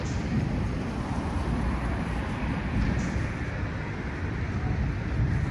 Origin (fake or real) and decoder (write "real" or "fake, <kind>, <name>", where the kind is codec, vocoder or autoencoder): real